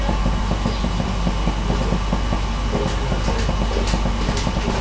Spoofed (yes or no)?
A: no